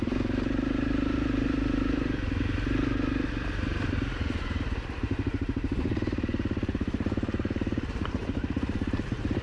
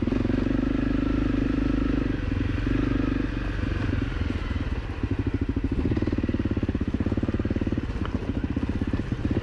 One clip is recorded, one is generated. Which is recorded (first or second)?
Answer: second